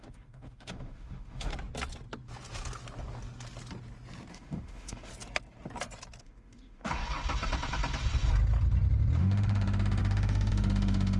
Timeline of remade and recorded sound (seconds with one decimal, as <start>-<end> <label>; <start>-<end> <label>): 0.0-1.5 remade; 1.5-4.3 recorded; 4.3-5.1 remade; 5.1-6.2 recorded; 6.2-7.0 remade; 7.0-9.2 recorded; 9.2-11.2 remade